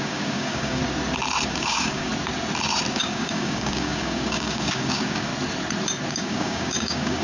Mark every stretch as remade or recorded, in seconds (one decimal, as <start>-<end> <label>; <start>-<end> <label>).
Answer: 0.0-0.8 remade; 0.8-1.5 recorded; 1.5-2.1 remade; 2.1-2.9 recorded; 2.9-5.3 remade; 5.3-6.1 recorded; 6.1-7.2 remade